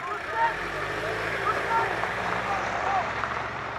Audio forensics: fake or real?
fake